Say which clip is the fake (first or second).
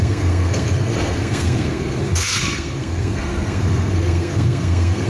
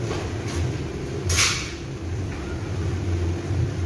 first